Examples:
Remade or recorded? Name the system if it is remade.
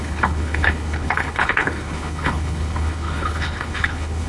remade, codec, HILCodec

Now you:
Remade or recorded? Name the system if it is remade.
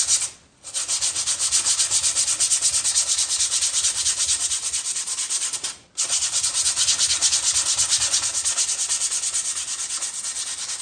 recorded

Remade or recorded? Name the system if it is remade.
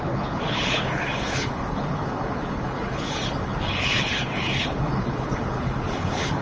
remade, codec, HILCodec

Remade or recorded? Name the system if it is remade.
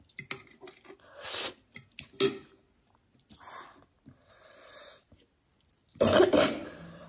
recorded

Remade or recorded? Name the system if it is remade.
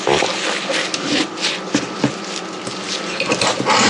recorded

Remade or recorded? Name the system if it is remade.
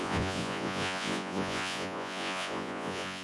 remade, vocoder, Vocos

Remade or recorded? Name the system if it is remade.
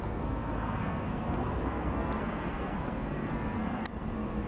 remade, codec, SNAC